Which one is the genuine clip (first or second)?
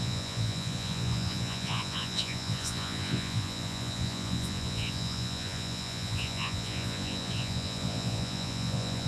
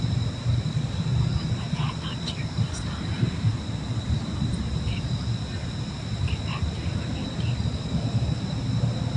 second